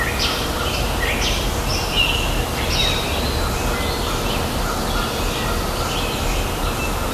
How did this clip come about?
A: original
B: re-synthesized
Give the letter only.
A